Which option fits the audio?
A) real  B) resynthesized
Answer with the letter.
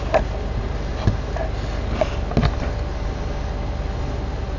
A